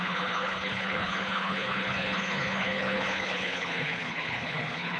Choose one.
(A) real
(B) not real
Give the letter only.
B